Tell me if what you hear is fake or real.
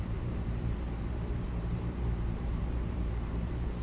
fake